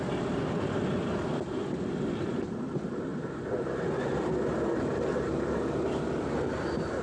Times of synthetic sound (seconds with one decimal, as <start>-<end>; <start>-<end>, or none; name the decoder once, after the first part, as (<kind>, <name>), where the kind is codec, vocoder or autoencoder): none